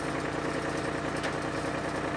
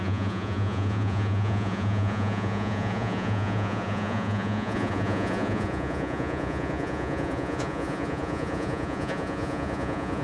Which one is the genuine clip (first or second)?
first